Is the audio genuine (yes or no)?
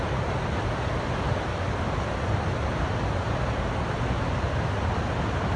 yes